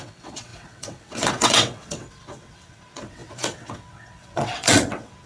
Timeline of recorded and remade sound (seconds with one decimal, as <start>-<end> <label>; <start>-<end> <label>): 0.0-5.3 remade

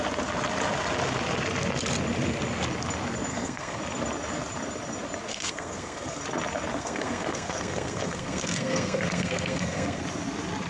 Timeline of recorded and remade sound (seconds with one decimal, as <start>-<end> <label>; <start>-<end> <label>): 0.0-3.3 recorded; 3.3-3.8 remade; 3.8-5.3 recorded; 5.3-6.2 remade; 6.2-6.7 recorded; 6.7-10.0 remade; 10.0-10.7 recorded

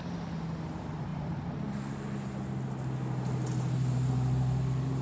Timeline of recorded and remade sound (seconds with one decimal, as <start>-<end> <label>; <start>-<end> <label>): 0.0-5.0 recorded

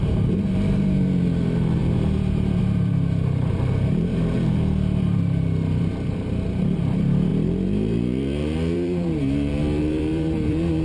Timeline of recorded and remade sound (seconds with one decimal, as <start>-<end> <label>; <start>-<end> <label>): 0.0-10.8 remade

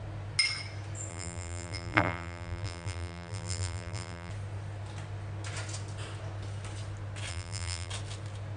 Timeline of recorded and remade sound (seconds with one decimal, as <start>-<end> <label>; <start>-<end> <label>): 0.0-1.1 recorded; 1.1-4.3 remade; 4.3-7.3 recorded; 7.3-7.9 remade; 7.9-8.6 recorded

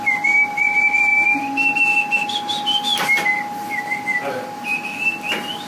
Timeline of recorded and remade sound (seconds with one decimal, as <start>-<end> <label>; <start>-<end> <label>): 0.0-5.7 recorded

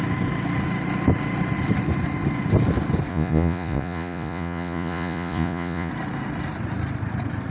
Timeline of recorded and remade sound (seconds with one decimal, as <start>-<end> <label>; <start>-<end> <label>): 0.0-3.1 recorded; 3.1-5.9 remade; 5.9-7.5 recorded

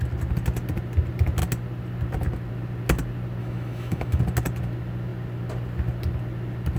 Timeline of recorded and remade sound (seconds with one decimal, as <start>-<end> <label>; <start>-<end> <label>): 0.0-3.4 recorded; 3.4-4.2 remade; 4.2-6.8 recorded